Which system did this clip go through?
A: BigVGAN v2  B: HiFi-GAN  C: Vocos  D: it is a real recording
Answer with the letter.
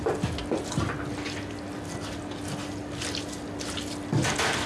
D